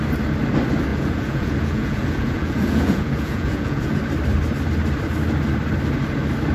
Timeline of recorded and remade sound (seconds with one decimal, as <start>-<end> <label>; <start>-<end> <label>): 0.0-0.9 recorded; 0.9-4.0 remade; 4.0-6.5 recorded